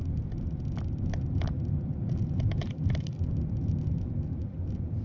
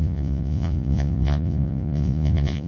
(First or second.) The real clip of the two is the first